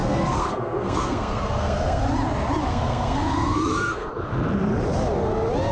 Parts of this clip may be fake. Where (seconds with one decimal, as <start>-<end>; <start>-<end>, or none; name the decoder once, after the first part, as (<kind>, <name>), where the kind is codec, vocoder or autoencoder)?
0.0-2.0 (codec, SNAC); 2.7-4.1